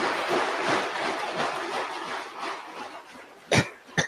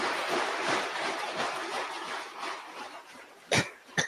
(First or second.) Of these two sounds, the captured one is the first